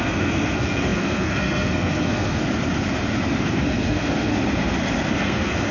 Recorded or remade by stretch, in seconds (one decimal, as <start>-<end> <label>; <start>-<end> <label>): 0.0-2.4 remade; 2.4-3.4 recorded; 3.4-4.3 remade; 4.3-5.1 recorded; 5.1-5.7 remade